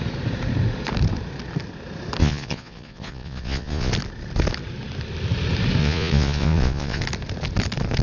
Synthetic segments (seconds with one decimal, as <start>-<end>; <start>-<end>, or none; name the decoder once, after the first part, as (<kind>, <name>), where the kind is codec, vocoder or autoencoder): 2.2-3.9 (vocoder, Vocos); 5.8-7.0